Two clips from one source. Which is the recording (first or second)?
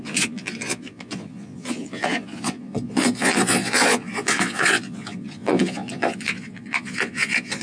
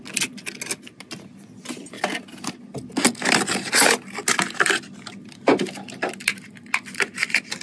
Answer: second